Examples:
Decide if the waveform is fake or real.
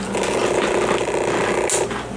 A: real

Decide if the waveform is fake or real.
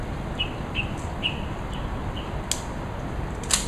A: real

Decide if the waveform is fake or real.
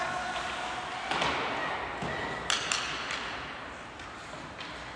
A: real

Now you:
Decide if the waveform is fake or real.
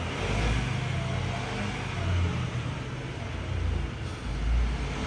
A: real